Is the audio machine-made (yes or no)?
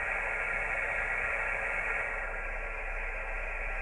no